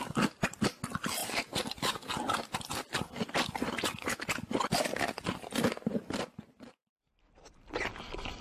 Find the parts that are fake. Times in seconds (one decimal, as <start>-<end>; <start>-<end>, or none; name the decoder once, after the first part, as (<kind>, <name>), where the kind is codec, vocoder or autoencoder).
none